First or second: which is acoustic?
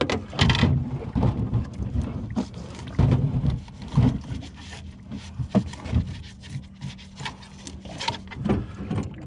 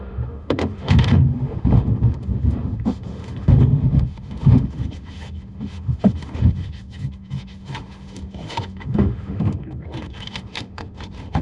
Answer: first